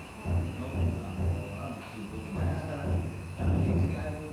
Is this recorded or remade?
remade